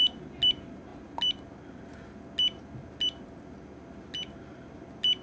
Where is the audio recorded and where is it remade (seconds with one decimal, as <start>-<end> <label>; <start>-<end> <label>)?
0.0-5.2 recorded